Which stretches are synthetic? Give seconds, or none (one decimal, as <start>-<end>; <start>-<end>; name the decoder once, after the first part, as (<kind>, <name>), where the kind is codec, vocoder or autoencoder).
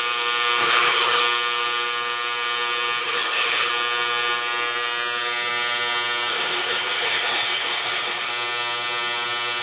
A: 0.6-1.2 (codec, HILCodec); 3.0-3.7; 6.3-8.3